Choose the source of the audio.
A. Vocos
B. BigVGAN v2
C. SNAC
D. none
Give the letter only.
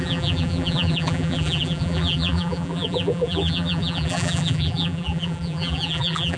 B